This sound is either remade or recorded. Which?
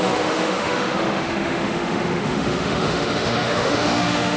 remade